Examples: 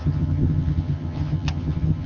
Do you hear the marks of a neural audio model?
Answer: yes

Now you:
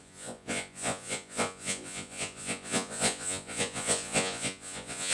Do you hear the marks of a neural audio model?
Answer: yes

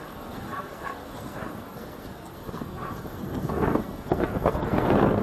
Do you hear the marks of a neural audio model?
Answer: yes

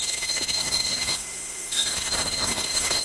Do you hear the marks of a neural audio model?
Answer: yes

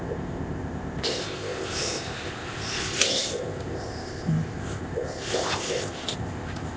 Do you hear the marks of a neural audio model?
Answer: yes